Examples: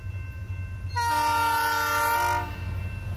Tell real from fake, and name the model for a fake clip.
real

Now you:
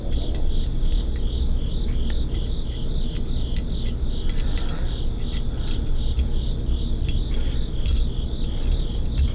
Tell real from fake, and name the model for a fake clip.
real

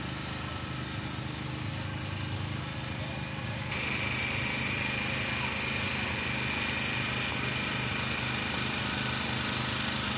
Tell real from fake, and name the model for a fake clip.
real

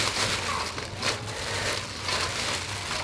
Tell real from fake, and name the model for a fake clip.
real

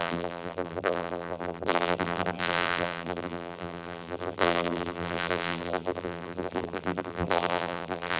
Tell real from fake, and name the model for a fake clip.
fake, vocoder, BigVGAN v2